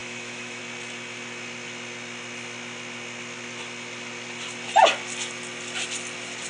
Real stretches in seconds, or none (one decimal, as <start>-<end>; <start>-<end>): 0.6-6.5